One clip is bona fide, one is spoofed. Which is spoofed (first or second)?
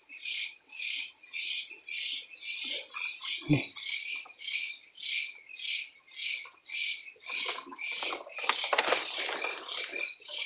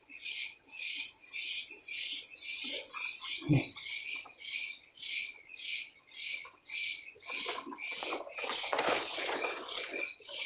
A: second